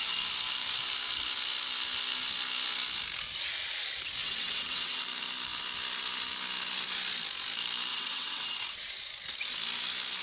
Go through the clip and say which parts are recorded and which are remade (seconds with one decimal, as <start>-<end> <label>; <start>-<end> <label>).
0.0-4.2 recorded; 4.2-5.0 remade; 5.0-7.9 recorded; 7.9-8.9 remade; 8.9-10.2 recorded